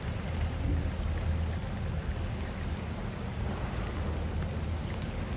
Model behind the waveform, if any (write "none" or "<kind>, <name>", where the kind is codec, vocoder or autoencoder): none